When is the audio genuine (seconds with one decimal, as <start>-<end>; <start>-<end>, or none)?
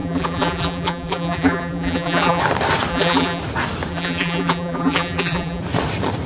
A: 2.4-2.9; 3.4-3.9; 5.6-6.3